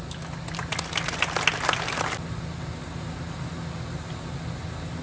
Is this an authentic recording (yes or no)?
yes